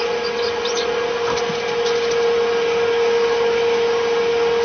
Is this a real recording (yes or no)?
yes